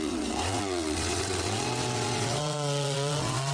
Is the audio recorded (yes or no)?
no